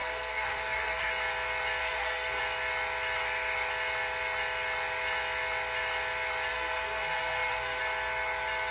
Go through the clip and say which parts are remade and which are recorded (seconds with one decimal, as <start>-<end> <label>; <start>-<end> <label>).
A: 0.0-1.1 remade; 1.1-1.8 recorded; 1.8-2.4 remade; 2.4-6.5 recorded; 6.5-7.8 remade; 7.8-8.7 recorded